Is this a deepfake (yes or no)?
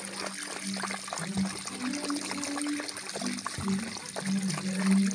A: no